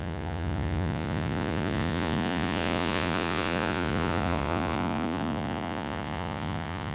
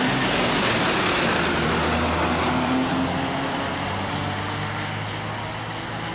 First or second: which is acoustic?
second